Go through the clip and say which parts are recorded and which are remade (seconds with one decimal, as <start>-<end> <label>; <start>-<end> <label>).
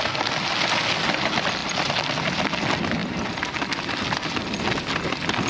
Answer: 0.0-5.5 recorded